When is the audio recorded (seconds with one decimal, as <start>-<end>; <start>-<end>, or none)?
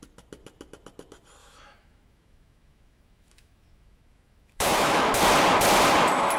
0.0-1.4; 5.2-6.4